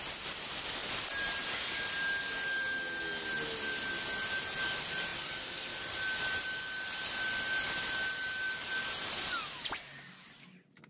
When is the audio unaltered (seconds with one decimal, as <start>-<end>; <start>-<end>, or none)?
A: 0.0-10.9

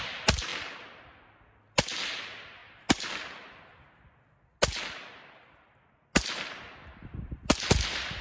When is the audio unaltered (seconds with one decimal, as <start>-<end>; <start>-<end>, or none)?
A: 0.0-0.5; 1.0-7.0; 7.5-8.2

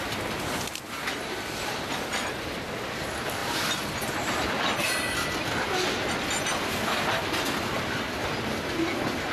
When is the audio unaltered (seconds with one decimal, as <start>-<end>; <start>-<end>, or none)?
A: 0.0-9.3

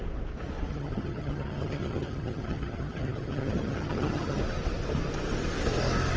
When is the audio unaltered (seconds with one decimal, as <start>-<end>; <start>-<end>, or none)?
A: 0.0-0.7; 4.4-6.2

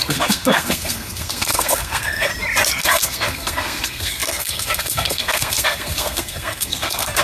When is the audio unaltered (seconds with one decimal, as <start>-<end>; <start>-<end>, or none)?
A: 2.3-2.8

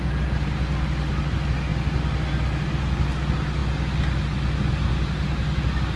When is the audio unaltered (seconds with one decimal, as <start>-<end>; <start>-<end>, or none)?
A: 0.0-6.0

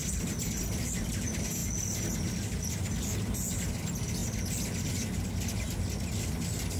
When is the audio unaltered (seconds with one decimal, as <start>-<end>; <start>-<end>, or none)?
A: 0.0-6.8